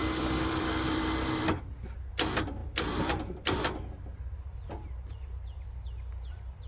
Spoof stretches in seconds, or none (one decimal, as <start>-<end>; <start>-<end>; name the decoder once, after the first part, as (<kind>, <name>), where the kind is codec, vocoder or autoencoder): 0.0-1.6 (vocoder, BigVGAN v2); 2.6-6.7